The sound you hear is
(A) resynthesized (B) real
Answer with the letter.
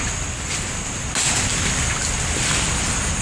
B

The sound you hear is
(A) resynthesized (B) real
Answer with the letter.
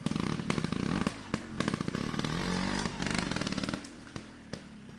B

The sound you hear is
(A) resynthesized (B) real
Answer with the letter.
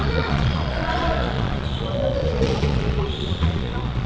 A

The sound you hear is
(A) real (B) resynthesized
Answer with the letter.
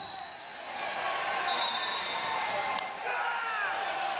A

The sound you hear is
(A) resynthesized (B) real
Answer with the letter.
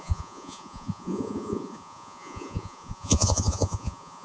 A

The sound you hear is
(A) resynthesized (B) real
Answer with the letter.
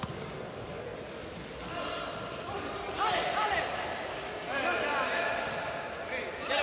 B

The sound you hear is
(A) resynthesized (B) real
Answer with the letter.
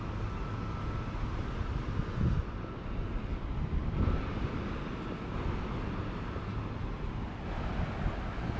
B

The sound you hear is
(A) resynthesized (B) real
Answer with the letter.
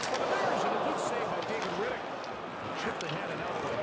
B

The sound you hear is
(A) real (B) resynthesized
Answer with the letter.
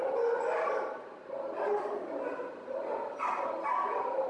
A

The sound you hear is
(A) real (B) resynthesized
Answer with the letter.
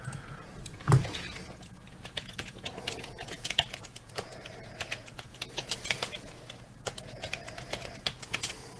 B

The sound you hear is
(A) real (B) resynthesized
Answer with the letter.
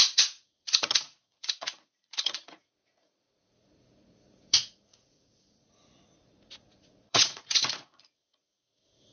B